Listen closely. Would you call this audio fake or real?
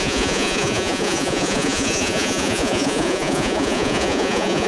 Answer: fake